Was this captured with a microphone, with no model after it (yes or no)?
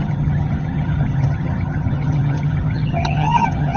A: no